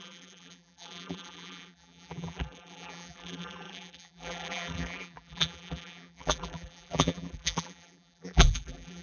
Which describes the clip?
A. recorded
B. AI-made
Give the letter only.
B